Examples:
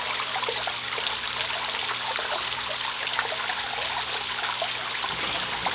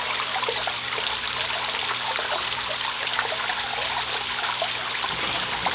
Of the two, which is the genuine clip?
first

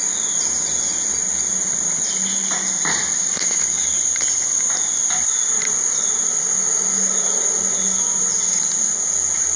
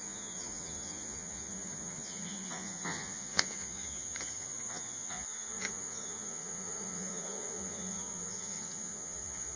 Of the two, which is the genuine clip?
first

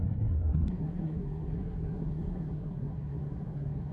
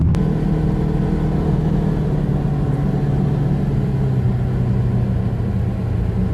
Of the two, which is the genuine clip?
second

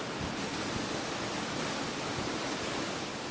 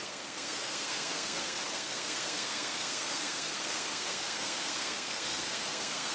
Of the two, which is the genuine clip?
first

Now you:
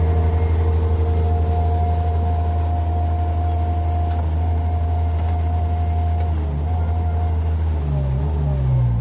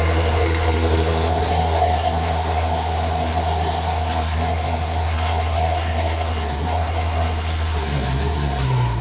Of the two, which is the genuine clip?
first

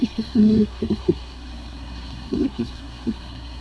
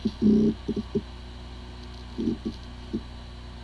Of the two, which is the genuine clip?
second